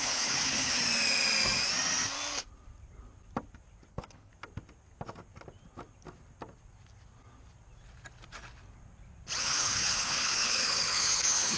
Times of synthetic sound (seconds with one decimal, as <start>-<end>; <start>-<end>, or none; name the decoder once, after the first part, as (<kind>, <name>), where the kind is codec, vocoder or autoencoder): 0.0-0.8 (codec, HILCodec); 3.9-4.3; 9.4-11.6